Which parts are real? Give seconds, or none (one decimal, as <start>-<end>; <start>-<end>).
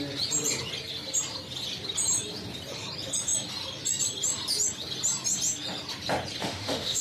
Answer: 0.0-6.4